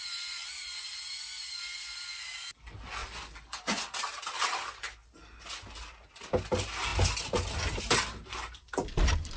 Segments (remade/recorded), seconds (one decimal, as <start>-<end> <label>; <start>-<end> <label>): 0.0-9.4 recorded